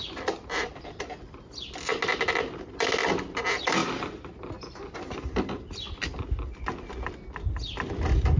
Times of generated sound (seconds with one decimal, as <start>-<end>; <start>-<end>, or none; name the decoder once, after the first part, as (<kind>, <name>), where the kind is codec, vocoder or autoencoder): none